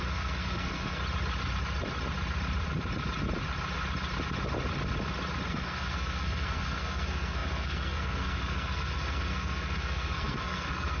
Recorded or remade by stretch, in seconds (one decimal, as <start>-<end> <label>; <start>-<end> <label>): 0.0-1.0 remade; 1.0-5.5 recorded; 5.5-11.0 remade

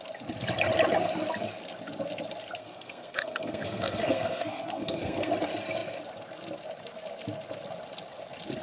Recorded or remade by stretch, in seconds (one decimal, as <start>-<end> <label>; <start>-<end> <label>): 0.0-2.6 recorded; 2.6-5.3 remade; 5.3-8.6 recorded

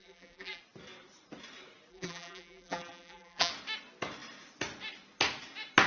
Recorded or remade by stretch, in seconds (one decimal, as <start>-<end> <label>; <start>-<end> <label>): 0.0-0.6 remade; 0.6-1.9 recorded; 1.9-3.5 remade; 3.5-5.9 recorded

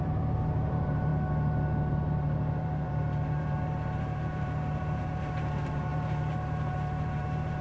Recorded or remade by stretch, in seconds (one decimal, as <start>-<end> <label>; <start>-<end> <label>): 0.0-1.1 remade; 1.1-1.9 recorded; 1.9-7.6 remade